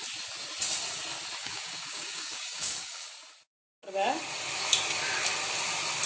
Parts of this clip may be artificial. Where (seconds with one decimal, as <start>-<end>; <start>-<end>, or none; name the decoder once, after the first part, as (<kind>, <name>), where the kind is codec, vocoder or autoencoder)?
1.4-3.1 (codec, DAC)